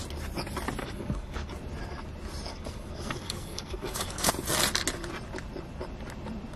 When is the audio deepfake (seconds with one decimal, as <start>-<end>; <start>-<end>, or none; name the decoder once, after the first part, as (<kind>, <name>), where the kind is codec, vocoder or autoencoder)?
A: 0.8-1.5 (codec, SNAC); 2.5-4.3